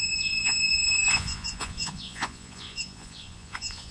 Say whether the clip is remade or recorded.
remade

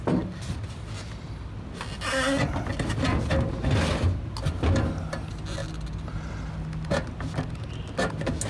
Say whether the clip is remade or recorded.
recorded